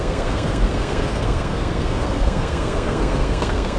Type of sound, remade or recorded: remade